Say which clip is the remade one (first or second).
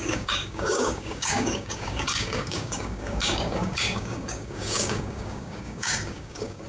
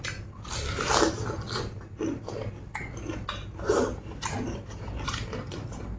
first